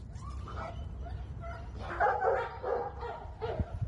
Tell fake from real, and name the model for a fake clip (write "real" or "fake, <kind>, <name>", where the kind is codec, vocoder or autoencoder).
real